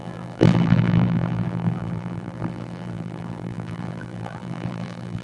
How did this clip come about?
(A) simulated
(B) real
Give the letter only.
A